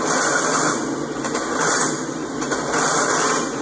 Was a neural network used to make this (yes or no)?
no